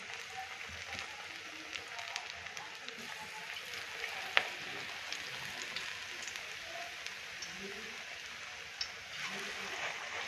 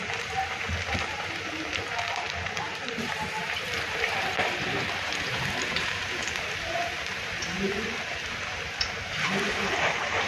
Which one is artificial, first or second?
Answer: second